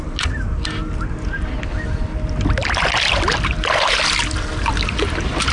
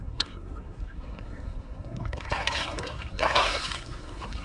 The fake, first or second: second